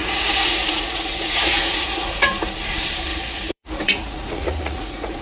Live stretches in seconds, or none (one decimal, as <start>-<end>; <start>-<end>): 2.5-3.1